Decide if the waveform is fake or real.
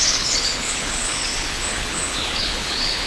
fake